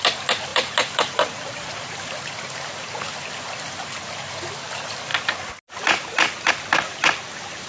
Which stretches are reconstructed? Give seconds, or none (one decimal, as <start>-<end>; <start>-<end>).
0.5-1.7